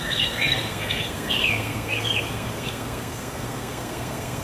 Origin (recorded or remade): remade